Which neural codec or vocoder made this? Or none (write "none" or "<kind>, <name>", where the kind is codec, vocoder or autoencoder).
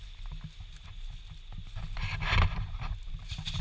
none